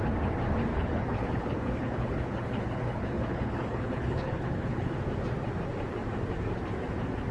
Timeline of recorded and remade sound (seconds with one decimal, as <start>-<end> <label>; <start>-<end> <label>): 0.0-0.7 recorded; 0.7-4.9 remade; 4.9-7.3 recorded